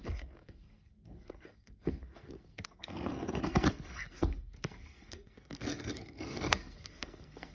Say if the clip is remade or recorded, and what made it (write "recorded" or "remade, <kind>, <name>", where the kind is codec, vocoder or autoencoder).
remade, codec, SNAC